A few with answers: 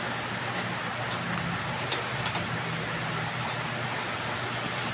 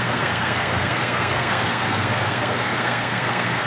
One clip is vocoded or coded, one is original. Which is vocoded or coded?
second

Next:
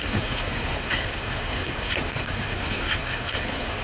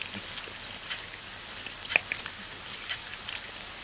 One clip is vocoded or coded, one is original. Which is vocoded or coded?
first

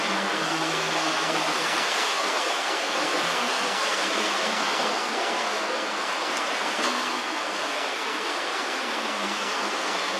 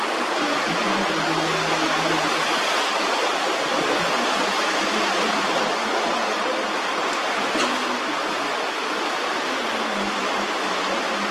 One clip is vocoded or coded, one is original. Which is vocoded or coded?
first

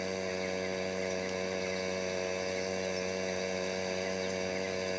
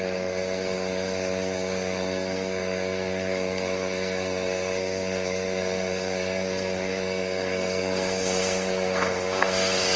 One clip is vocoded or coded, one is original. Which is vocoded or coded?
second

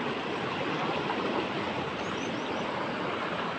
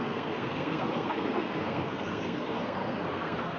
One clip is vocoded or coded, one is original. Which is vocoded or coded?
second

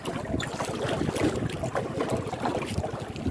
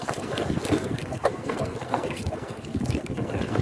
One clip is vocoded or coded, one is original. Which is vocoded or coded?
second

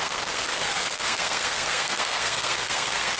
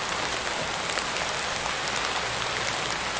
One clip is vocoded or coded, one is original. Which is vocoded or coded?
first